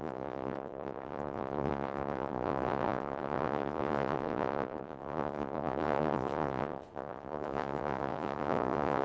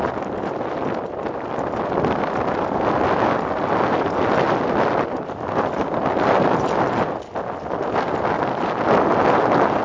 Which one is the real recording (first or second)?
second